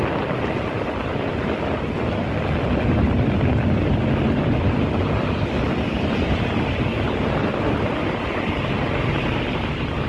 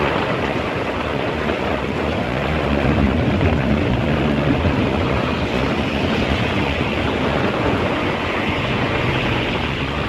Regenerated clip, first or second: second